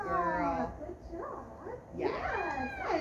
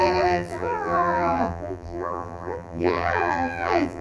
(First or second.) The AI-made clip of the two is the second